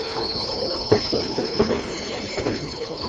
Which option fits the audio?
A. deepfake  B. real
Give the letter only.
A